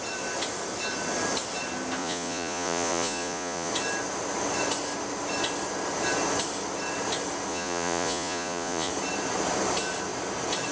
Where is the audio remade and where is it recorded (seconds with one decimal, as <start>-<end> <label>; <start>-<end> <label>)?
0.0-2.0 recorded; 2.0-3.7 remade; 3.7-7.5 recorded; 7.5-8.9 remade; 8.9-10.7 recorded